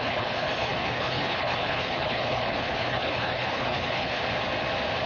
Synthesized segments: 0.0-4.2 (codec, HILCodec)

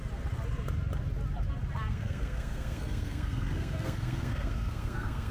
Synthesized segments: 1.9-5.3 (codec, SNAC)

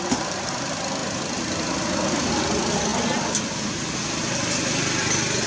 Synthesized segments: none

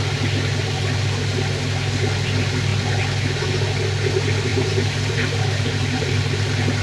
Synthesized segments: 4.5-6.1 (vocoder, BigVGAN v2)

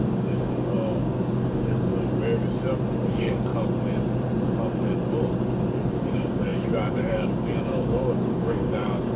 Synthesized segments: 0.0-1.9 (codec, DAC); 3.1-3.5; 5.7-9.2